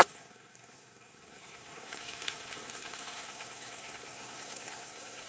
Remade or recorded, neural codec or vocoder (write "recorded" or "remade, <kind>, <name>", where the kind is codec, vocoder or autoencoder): remade, codec, SNAC